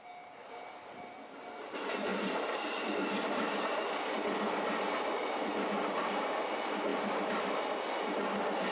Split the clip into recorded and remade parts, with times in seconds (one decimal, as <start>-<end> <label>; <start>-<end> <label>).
0.0-8.7 recorded